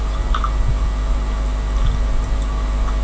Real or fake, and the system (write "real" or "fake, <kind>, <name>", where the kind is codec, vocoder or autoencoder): real